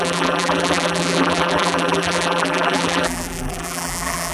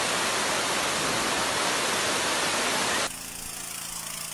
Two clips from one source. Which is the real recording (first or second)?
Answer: second